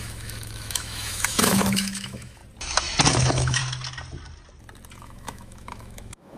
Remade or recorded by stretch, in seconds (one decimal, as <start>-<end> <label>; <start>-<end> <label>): 0.0-2.4 remade; 2.4-3.1 recorded; 3.1-3.6 remade; 3.6-5.0 recorded; 5.0-6.4 remade